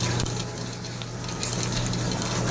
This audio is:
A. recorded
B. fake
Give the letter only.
A